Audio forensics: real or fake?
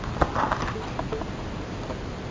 real